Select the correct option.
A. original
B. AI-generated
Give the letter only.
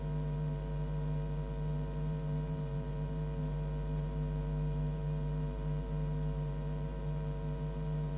B